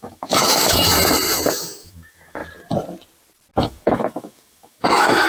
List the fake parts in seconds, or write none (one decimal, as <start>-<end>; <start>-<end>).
0.0-0.9; 1.5-2.4; 3.6-5.3